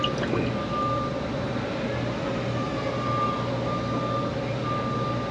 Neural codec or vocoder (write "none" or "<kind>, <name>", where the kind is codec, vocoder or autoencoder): none